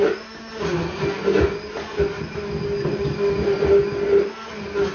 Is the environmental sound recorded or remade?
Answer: recorded